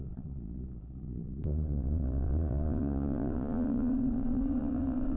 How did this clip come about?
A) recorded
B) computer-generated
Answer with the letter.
B